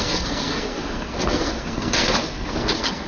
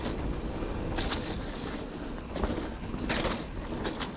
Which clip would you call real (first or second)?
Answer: second